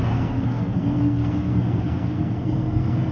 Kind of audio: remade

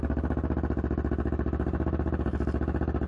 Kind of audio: recorded